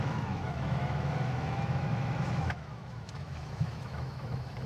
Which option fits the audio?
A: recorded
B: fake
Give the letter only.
B